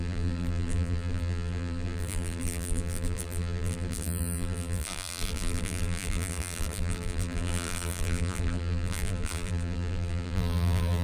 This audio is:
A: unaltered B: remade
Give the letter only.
B